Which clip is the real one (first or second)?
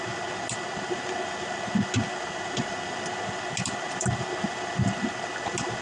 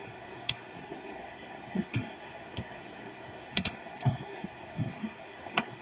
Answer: first